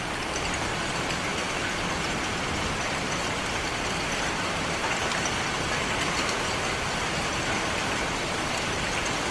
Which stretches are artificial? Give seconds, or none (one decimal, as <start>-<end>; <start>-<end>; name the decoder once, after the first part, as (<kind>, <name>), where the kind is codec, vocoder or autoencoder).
none